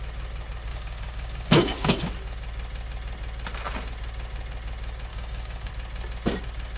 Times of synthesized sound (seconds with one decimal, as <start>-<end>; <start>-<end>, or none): 0.7-2.1; 5.1-5.7